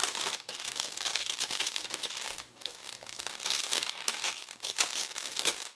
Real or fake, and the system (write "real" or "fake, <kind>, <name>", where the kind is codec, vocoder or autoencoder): fake, codec, DAC